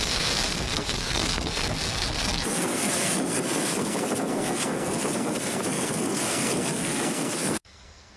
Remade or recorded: remade